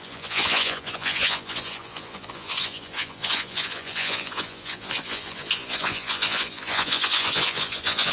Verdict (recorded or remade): remade